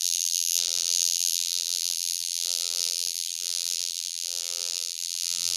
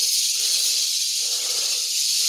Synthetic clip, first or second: first